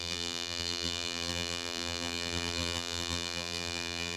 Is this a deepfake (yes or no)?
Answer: yes